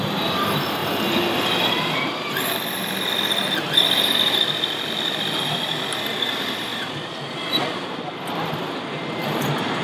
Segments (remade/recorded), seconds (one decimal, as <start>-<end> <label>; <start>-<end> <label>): 0.0-6.7 remade; 6.7-8.0 recorded; 8.0-9.8 remade